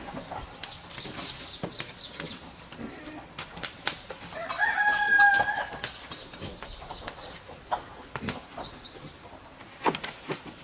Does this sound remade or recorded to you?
recorded